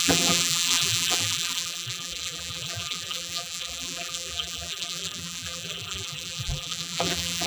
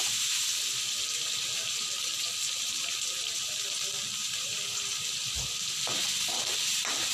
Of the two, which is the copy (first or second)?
first